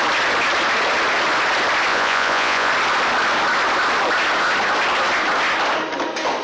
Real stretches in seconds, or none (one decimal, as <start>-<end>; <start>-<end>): 0.0-1.9; 2.7-6.4